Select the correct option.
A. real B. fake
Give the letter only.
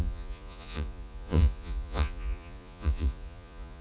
B